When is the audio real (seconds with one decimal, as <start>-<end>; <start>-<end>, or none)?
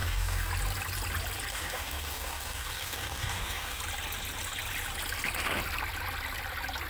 0.5-1.5; 3.8-6.9